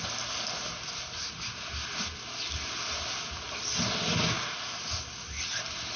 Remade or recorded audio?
recorded